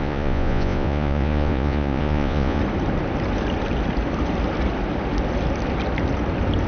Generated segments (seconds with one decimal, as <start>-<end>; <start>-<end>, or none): 0.0-2.6

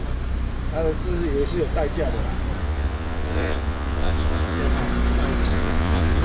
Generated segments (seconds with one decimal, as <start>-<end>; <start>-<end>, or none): 2.6-4.6; 5.5-6.2